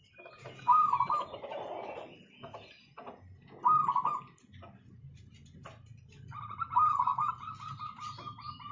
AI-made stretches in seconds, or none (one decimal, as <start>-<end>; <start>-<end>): none

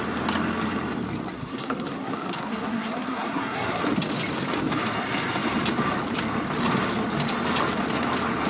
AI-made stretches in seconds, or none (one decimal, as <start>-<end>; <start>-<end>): 1.3-3.8

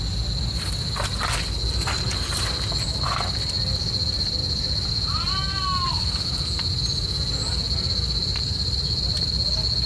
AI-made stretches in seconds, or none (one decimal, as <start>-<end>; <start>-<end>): 4.4-5.3; 8.2-9.3